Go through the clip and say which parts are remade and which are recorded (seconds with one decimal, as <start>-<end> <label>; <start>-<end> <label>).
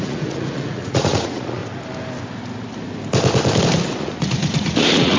0.0-1.6 remade; 1.6-4.0 recorded; 4.0-5.2 remade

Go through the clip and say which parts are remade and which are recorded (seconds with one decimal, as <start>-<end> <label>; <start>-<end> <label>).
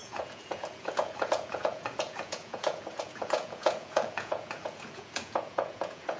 0.0-6.2 remade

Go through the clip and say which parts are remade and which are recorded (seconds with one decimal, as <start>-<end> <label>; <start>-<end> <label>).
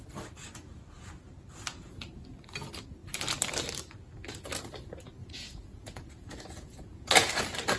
0.0-5.2 recorded; 5.2-7.3 remade; 7.3-7.8 recorded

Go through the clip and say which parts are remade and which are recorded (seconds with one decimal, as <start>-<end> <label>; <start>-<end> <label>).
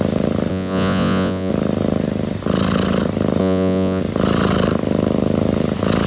0.0-0.5 recorded; 0.5-1.5 remade; 1.5-3.4 recorded; 3.4-4.0 remade; 4.0-6.1 recorded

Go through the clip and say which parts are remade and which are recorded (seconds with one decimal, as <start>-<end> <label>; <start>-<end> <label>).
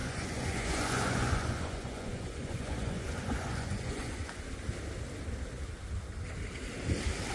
0.0-4.4 remade; 4.4-7.3 recorded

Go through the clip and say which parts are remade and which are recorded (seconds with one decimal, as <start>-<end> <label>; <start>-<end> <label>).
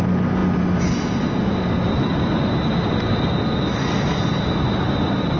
0.0-5.4 recorded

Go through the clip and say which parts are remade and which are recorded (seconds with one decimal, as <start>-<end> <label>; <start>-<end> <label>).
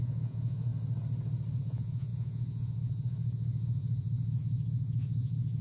0.0-0.7 remade; 0.7-1.6 recorded; 1.6-5.6 remade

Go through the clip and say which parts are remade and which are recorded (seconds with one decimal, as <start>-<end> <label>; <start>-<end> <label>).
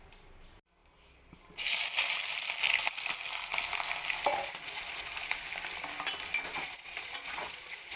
0.0-4.3 recorded; 4.3-5.1 remade; 5.1-6.5 recorded; 6.5-8.0 remade